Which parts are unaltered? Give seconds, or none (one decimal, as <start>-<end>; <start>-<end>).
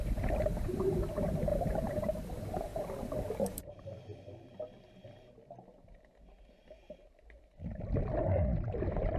0.0-1.5; 2.3-9.2